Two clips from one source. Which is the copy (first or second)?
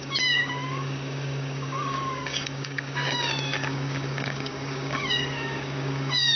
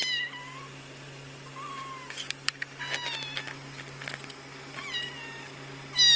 first